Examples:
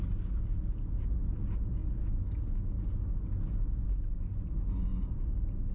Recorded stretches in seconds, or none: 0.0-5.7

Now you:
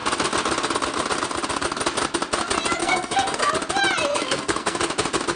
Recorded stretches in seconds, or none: 0.0-2.8; 3.5-4.1; 4.8-5.4

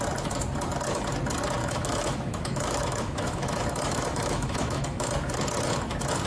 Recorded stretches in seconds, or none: 0.0-1.6; 5.1-6.3

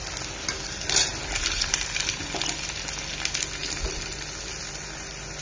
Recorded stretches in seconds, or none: 0.0-5.4

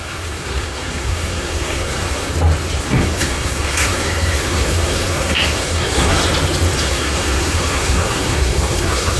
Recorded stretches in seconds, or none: 2.3-2.8; 6.2-6.8

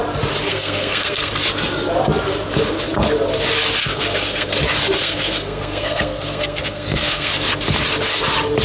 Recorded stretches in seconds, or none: 0.0-0.5; 1.3-3.8; 4.5-5.0; 7.3-8.6

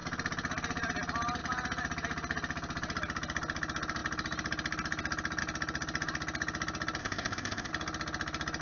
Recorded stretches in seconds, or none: 0.0-7.0; 7.7-8.6